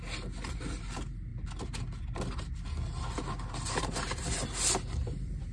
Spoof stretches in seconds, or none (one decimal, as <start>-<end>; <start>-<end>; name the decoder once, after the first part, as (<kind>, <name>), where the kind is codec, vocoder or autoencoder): none